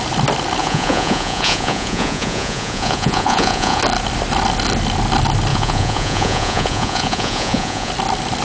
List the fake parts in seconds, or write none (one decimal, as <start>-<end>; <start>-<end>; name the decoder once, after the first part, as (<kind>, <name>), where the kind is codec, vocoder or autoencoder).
0.6-3.8 (vocoder, Vocos); 5.5-7.9